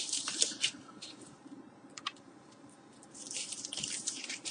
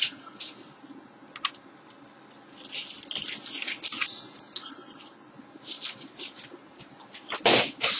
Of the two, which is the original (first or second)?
second